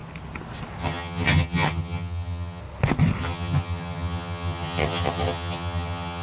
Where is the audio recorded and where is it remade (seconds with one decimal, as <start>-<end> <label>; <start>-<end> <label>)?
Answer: 0.0-0.8 recorded; 0.8-2.6 remade; 2.6-3.2 recorded; 3.2-6.2 remade